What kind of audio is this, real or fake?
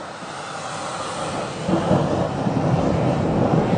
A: real